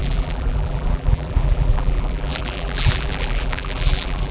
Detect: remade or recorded remade